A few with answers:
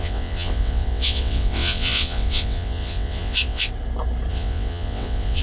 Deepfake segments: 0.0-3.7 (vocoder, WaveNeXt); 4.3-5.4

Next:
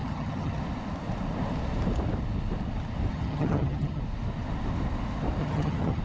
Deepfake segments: 0.0-0.6 (vocoder, HiFi-GAN); 3.1-4.0; 5.4-6.0

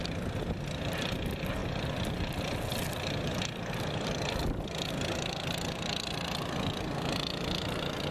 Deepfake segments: 1.6-4.9 (vocoder, BigVGAN v2)

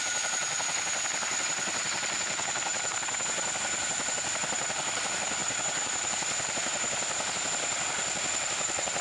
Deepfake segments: 2.7-5.0 (vocoder, BigVGAN v2); 5.4-7.3

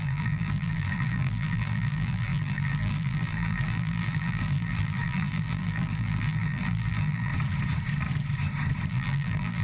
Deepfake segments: 0.0-7.3 (vocoder, BigVGAN v2); 8.9-9.6

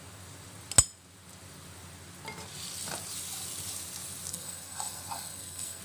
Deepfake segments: 4.3-5.8 (codec, SNAC)